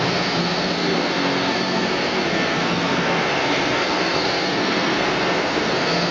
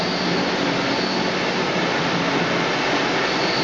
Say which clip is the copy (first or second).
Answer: first